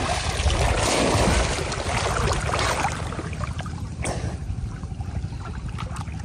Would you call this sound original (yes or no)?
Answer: yes